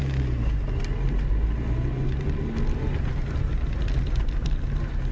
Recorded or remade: recorded